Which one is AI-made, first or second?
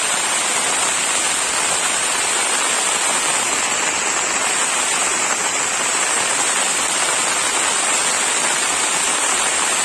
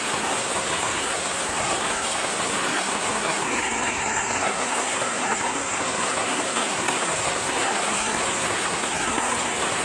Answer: second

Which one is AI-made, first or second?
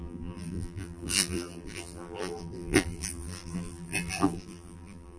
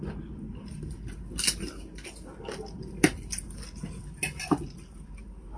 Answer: first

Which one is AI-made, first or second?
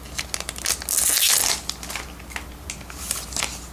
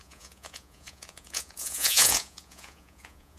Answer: second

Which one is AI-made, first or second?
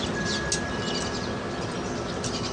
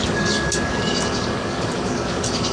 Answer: second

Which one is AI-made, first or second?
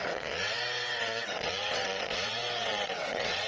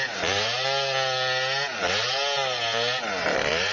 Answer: first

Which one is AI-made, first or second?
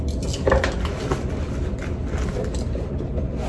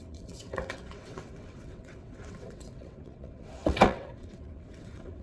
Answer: second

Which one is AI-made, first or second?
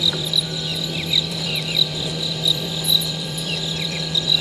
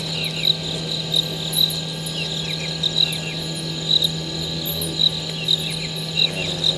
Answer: first